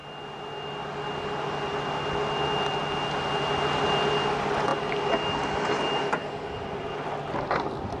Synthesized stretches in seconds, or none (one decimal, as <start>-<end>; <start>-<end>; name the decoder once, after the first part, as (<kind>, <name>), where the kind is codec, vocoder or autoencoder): none